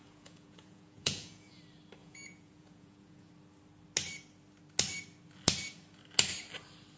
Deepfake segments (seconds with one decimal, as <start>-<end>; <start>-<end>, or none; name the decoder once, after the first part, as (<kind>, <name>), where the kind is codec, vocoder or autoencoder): 0.0-1.6 (vocoder, Vocos); 2.0-3.3

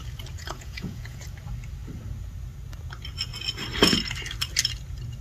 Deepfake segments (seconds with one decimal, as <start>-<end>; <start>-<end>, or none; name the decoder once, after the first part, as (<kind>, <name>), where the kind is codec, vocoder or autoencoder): 0.4-1.2 (vocoder, Vocos)